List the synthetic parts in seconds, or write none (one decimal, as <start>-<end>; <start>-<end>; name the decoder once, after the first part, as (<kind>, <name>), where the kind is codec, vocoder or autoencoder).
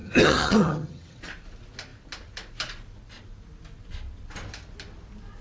0.0-1.2 (vocoder, HiFi-GAN)